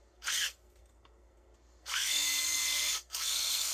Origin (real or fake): fake